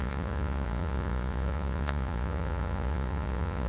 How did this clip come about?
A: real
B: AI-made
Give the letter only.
B